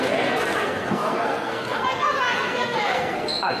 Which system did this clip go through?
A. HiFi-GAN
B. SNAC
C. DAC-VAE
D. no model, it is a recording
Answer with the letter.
B